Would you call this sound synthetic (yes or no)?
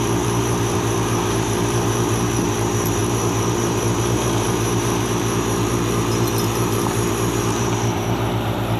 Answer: yes